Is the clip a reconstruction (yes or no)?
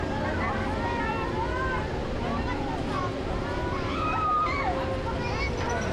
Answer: no